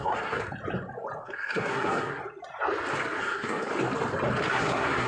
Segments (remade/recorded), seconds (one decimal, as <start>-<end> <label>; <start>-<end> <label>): 0.0-0.4 remade; 0.4-1.2 recorded; 1.2-2.2 remade; 2.2-3.2 recorded; 3.2-3.7 remade; 3.7-4.5 recorded; 4.5-5.1 remade